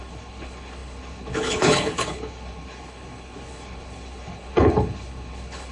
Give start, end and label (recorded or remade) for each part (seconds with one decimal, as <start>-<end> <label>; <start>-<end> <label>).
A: 0.0-5.7 remade